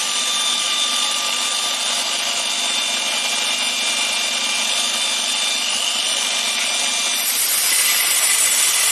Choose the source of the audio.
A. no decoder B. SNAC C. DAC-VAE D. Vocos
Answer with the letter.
A